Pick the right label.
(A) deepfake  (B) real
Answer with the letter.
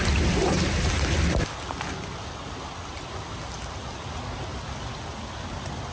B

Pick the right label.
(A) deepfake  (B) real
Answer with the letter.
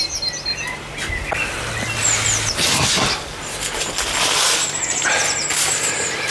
B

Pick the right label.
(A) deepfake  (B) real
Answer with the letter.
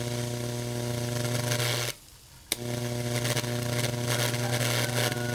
B